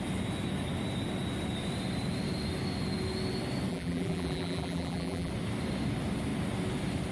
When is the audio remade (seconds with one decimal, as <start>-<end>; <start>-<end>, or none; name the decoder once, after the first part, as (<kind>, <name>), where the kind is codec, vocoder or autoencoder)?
3.7-5.3 (vocoder, BigVGAN v2)